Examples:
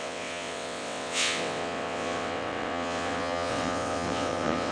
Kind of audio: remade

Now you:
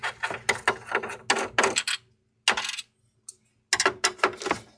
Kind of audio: recorded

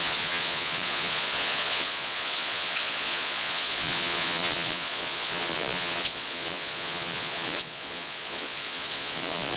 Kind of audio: remade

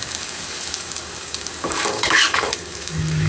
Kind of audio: remade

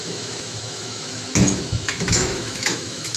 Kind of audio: remade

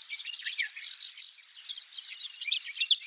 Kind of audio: remade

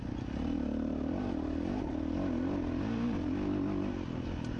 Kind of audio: recorded